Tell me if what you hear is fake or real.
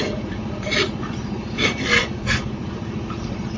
fake